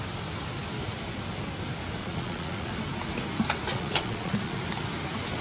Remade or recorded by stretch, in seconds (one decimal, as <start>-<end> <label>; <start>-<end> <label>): 0.0-2.0 recorded; 2.0-2.7 remade; 2.7-3.7 recorded; 3.7-4.6 remade; 4.6-5.4 recorded